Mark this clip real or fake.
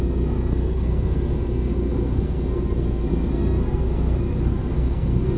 fake